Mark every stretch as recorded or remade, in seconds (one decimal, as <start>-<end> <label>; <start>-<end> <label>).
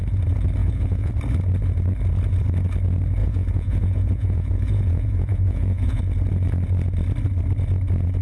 0.0-0.6 recorded; 0.6-1.1 remade; 1.1-3.2 recorded; 3.2-6.0 remade; 6.0-8.2 recorded